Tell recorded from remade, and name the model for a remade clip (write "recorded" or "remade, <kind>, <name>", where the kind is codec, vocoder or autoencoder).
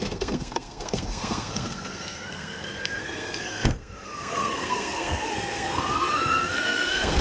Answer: remade, codec, SNAC